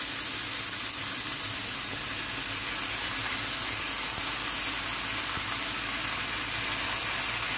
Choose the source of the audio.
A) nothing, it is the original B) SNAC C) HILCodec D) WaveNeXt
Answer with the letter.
A